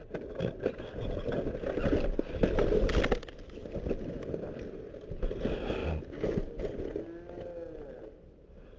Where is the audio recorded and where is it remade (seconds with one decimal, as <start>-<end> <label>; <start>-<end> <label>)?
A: 0.0-8.8 recorded